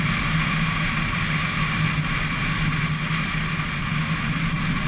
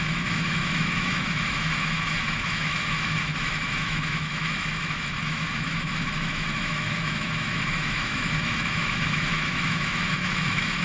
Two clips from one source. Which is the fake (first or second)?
second